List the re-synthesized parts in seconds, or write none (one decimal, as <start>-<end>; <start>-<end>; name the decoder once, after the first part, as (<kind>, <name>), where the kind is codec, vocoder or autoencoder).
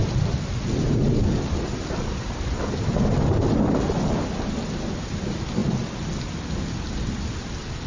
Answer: none